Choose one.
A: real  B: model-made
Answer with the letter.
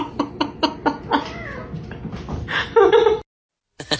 A